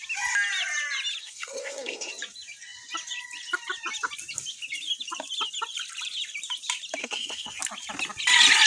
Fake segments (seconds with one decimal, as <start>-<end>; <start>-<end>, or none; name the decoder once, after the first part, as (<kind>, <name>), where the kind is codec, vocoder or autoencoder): 1.2-2.1 (codec, SNAC); 7.0-7.6